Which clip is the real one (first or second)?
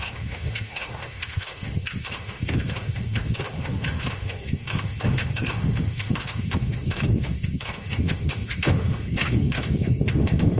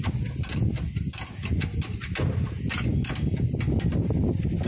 second